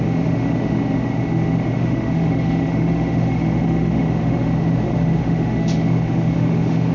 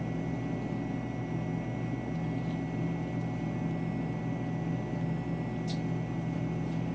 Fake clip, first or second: first